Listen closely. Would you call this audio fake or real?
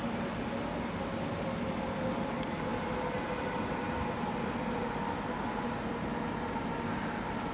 real